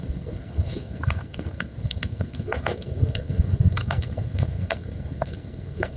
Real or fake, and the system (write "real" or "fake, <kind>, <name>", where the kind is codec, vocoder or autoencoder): fake, codec, SNAC